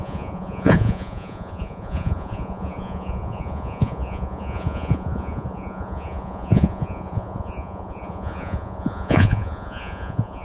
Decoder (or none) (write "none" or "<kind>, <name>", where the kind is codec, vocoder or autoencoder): vocoder, Vocos